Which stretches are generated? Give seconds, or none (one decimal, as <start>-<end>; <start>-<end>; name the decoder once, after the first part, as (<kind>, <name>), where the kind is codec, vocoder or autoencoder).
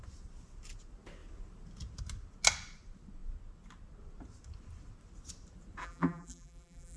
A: 5.8-7.0 (vocoder, BigVGAN v2)